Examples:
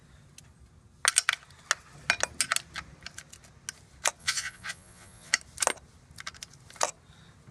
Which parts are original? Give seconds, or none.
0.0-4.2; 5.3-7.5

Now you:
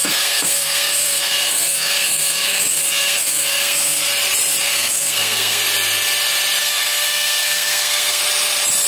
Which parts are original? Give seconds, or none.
4.1-4.6; 5.6-6.6; 8.2-8.9